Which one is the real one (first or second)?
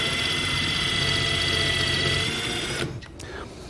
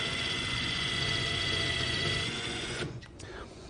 first